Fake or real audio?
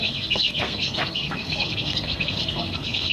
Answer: fake